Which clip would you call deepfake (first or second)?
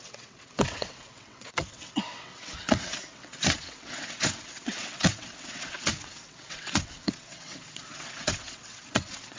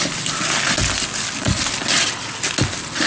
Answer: first